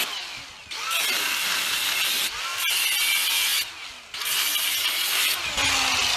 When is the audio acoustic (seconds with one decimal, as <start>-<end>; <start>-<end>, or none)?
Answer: 0.0-6.2